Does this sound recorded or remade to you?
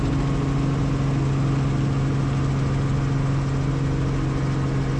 recorded